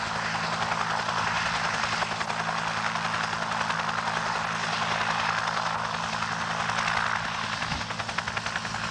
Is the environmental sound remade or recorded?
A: recorded